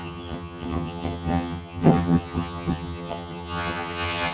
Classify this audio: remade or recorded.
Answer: remade